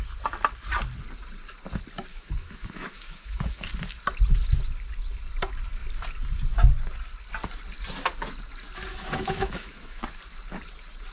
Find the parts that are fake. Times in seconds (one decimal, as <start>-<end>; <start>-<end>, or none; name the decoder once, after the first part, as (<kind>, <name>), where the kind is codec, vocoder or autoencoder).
2.1-3.7 (autoencoder, DAC-VAE); 8.9-10.0